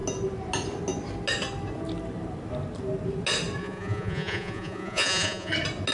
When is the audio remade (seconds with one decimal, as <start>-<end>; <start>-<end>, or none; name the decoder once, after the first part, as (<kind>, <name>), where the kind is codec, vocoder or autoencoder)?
3.6-5.5 (vocoder, Vocos)